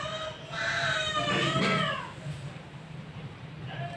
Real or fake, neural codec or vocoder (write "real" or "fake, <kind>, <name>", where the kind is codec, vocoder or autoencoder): real